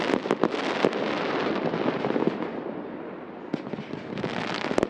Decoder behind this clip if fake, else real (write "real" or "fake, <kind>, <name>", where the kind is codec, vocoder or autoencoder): real